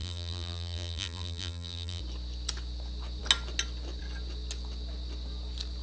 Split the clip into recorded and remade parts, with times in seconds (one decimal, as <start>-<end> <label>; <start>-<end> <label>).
0.0-2.0 remade; 2.0-5.8 recorded